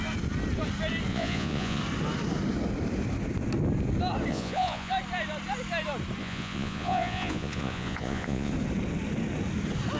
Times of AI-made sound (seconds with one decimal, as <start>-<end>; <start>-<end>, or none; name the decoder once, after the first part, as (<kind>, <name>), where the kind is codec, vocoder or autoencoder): 1.1-1.8 (vocoder, Vocos); 4.3-4.9; 6.2-8.5